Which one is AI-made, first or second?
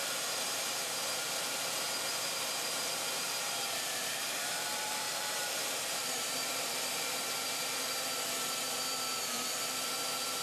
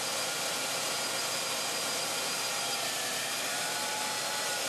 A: first